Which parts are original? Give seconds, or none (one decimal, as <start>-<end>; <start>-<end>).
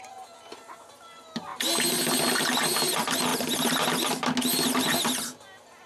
0.0-5.9